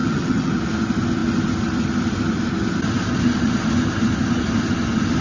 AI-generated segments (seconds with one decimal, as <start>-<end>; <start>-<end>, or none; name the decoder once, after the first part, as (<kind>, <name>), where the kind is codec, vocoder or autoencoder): 0.0-0.5 (vocoder, HiFi-GAN)